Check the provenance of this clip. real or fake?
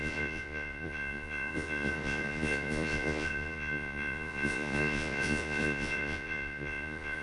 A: fake